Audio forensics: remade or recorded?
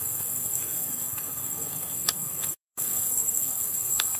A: remade